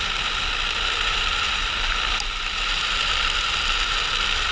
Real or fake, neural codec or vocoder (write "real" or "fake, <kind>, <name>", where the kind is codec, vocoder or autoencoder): fake, vocoder, BigVGAN v2